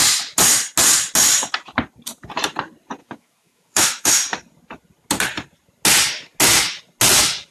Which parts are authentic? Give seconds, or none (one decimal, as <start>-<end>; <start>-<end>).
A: 0.0-3.0; 4.1-7.5